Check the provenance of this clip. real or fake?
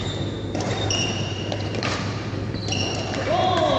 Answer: fake